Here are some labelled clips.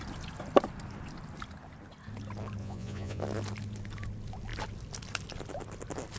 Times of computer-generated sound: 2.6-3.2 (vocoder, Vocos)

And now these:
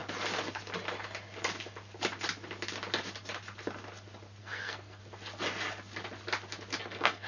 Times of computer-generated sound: 4.4-5.0 (codec, SNAC); 6.8-7.3

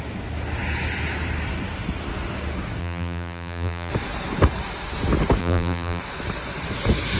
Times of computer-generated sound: 2.8-3.9 (vocoder, BigVGAN v2); 5.4-6.0

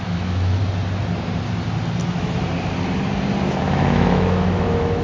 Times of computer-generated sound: 0.0-0.6 (autoencoder, DAC-VAE); 3.6-5.0